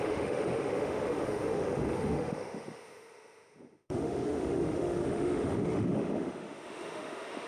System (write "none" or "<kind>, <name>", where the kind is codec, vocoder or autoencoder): autoencoder, DAC-VAE